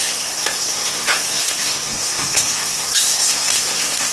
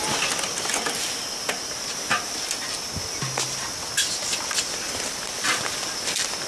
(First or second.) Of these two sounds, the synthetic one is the first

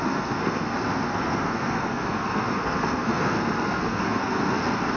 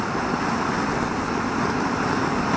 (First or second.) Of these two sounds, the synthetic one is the first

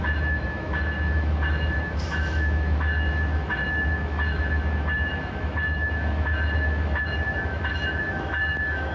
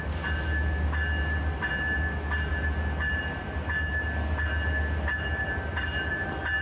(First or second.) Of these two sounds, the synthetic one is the first